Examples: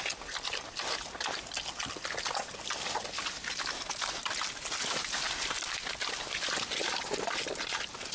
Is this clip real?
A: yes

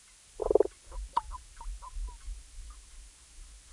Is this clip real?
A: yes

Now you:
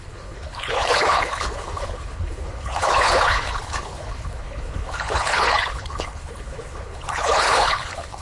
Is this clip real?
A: no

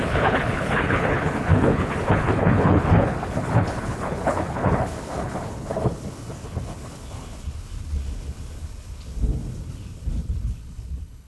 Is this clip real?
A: no